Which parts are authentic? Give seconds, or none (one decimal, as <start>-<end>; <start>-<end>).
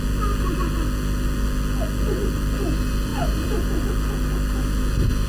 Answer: 0.0-3.1; 3.8-5.3